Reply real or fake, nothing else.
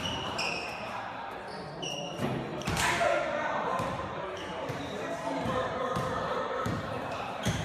fake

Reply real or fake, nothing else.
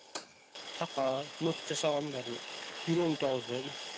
fake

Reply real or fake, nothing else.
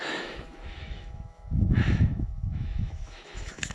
fake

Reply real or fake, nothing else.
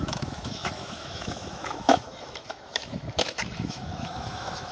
fake